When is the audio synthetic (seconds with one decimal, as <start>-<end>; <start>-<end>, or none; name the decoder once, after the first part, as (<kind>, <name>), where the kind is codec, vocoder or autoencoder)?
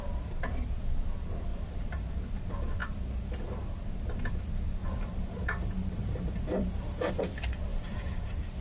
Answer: 1.5-2.1 (vocoder, BigVGAN v2); 4.8-7.2; 7.7-8.6